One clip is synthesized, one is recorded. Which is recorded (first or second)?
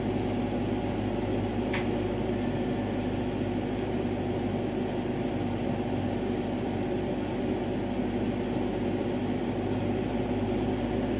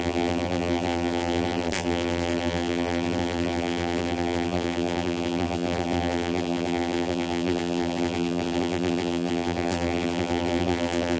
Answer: first